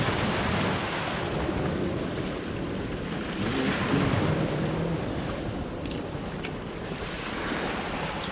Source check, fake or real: fake